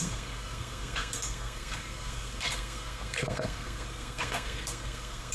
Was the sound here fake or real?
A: fake